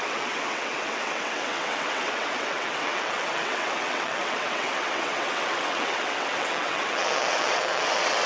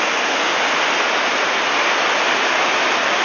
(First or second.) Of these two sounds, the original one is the second